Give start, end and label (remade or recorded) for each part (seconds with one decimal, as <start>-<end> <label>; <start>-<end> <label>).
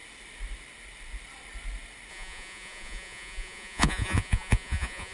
0.0-2.1 recorded; 2.1-5.1 remade